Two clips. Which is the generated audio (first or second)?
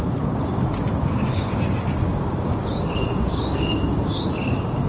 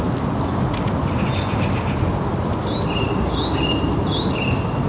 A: first